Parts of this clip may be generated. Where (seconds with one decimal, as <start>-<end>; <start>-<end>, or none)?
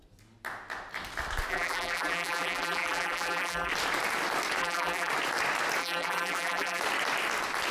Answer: 1.5-3.7; 4.6-5.1; 5.8-6.8